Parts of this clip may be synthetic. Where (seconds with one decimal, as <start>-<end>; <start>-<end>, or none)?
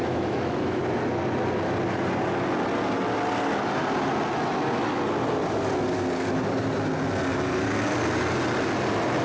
0.0-0.8